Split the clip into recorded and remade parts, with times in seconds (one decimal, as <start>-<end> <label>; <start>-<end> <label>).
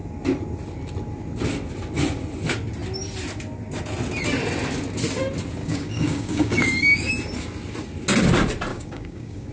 0.0-5.6 recorded; 5.6-7.1 remade; 7.1-8.7 recorded; 8.7-9.5 remade